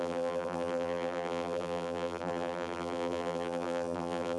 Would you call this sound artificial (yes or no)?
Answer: yes